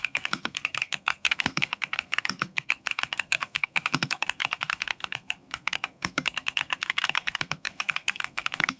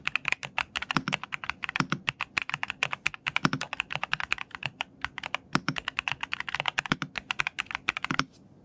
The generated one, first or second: first